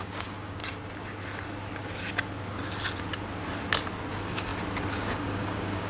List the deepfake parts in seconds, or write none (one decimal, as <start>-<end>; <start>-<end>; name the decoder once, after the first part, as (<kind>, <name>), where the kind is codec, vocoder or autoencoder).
0.0-0.6 (codec, DAC); 4.1-4.5; 5.1-5.9

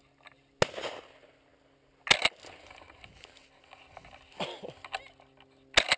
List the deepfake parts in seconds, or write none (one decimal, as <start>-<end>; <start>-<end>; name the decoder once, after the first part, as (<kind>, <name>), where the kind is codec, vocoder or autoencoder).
none

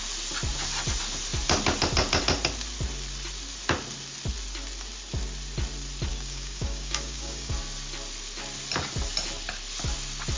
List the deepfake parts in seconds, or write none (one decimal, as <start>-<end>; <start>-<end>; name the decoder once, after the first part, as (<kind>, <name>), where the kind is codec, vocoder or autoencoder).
6.1-7.5 (codec, DAC)

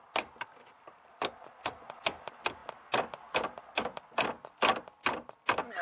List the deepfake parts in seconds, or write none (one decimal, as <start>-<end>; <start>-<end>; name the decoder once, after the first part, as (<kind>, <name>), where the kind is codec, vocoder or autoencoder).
none

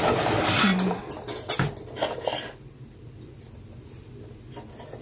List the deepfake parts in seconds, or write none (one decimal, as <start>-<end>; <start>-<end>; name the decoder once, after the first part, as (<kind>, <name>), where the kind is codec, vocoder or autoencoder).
none

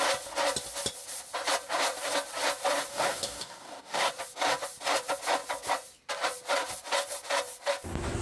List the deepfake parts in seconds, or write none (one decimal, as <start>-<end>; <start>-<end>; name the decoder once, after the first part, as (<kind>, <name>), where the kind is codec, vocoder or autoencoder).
2.9-4.1 (codec, DAC)

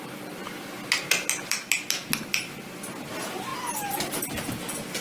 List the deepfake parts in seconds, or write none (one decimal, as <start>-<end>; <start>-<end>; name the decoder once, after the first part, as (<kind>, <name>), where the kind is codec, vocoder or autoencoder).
none

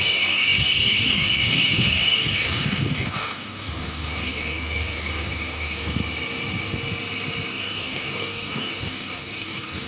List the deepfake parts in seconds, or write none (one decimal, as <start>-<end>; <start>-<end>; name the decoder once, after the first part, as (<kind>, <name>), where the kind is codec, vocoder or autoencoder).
0.0-6.0 (codec, DAC); 7.5-9.9